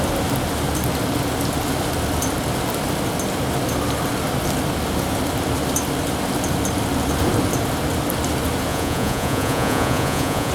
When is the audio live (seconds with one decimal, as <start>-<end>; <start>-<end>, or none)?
0.0-8.7